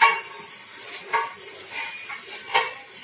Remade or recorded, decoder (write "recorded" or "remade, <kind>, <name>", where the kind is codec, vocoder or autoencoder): recorded